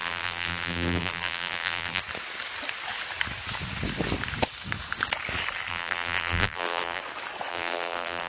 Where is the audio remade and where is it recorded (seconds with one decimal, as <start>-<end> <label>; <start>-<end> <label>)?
0.0-2.0 remade; 2.0-5.7 recorded; 5.7-7.0 remade; 7.0-7.5 recorded; 7.5-8.3 remade